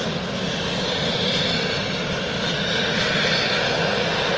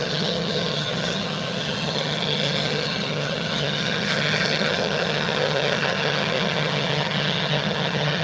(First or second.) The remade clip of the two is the second